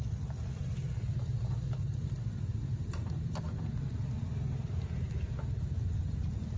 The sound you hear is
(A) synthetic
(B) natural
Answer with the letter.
B